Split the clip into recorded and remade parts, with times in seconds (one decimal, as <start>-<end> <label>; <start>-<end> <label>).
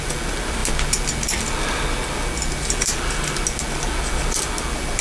0.0-5.0 recorded